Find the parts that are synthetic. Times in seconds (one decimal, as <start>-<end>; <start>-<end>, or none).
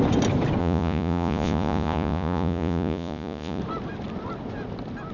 0.6-3.6